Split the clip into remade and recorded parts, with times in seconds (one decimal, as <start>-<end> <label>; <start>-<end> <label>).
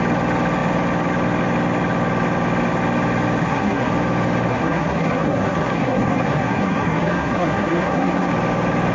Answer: 0.0-3.4 recorded; 3.4-3.9 remade; 3.9-4.5 recorded; 4.5-8.3 remade; 8.3-8.9 recorded